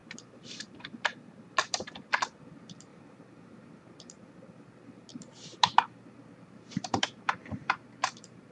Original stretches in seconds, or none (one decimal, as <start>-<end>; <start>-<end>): 2.0-2.9; 4.3-5.1